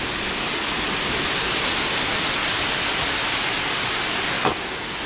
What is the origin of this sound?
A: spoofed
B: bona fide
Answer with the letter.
B